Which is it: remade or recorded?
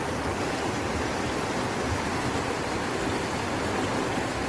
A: recorded